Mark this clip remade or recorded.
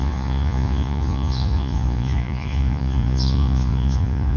remade